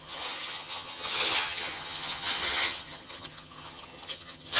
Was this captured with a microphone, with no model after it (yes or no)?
no